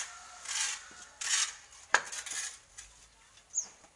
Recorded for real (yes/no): yes